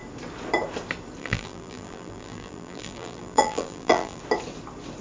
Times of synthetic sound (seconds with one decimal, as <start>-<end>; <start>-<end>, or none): 1.2-4.2